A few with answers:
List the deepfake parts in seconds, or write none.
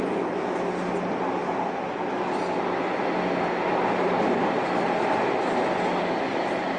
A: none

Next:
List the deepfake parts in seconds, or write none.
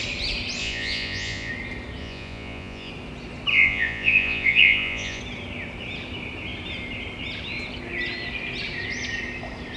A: 0.6-1.5 (vocoder, Vocos); 2.0-2.9; 3.5-5.2